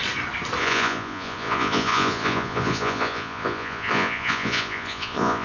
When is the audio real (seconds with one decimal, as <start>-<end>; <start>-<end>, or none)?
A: 0.0-0.6